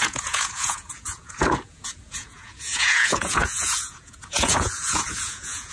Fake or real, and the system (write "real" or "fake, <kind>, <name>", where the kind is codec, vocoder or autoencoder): fake, vocoder, Vocos